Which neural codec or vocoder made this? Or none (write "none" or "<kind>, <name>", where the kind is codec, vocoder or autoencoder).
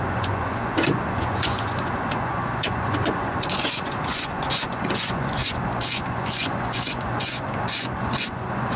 vocoder, Vocos